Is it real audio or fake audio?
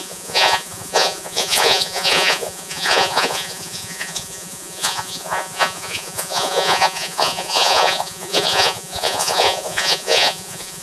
fake